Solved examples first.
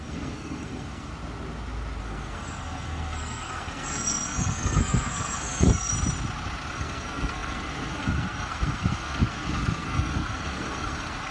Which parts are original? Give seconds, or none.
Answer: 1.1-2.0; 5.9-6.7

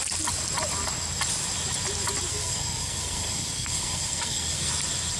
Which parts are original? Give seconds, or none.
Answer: 0.0-2.3; 4.7-5.2

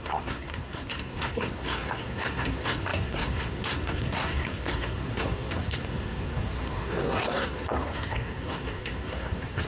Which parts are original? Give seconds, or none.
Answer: none

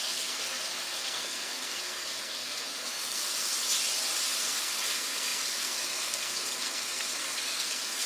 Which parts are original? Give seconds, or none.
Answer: 3.5-4.4

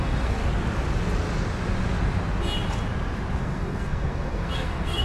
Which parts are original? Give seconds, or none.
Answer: 0.4-3.4